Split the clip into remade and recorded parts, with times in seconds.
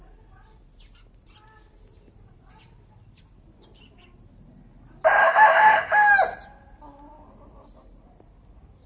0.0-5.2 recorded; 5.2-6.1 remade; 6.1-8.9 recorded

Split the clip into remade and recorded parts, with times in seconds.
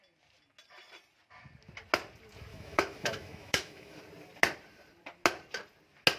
0.0-2.5 recorded; 2.5-4.0 remade; 4.0-6.2 recorded